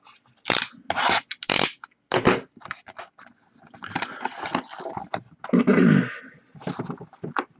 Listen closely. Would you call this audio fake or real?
real